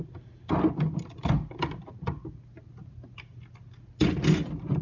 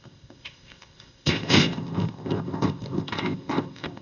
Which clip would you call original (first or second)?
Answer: first